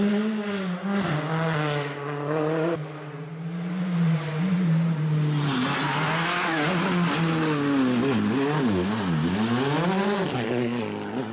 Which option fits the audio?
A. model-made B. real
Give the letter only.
B